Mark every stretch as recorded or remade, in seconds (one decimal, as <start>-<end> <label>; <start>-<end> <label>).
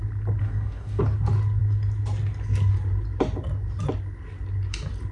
0.0-0.4 recorded; 0.4-1.0 remade; 1.0-5.1 recorded